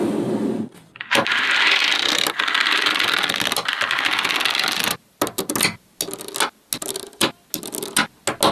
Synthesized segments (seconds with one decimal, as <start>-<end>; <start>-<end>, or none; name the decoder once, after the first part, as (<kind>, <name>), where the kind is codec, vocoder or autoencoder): none